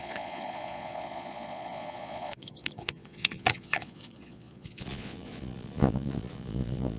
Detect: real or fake fake